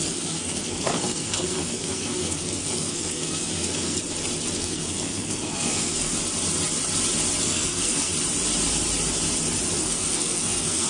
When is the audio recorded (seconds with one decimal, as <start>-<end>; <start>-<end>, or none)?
4.0-4.6; 6.1-7.4; 8.1-9.8